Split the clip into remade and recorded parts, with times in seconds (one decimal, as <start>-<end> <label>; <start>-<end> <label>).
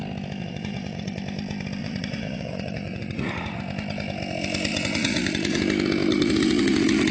0.0-0.4 recorded; 0.4-1.2 remade; 1.2-1.8 recorded; 1.8-3.6 remade; 3.6-4.7 recorded; 4.7-5.6 remade; 5.6-6.1 recorded; 6.1-7.1 remade